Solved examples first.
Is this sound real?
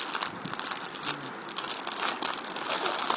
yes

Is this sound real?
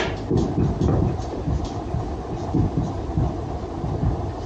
yes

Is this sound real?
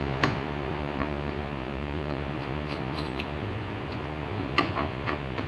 no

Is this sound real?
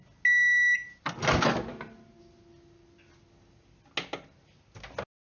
yes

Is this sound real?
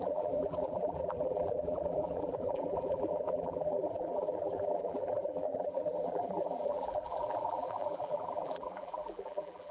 no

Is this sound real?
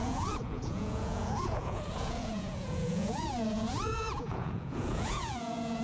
no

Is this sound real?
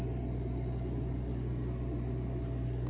yes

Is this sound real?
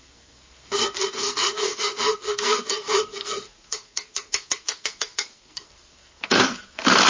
no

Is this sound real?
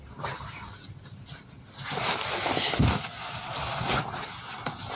yes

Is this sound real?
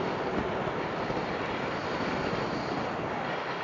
yes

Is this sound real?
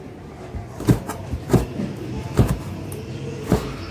yes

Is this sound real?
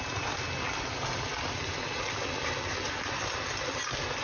yes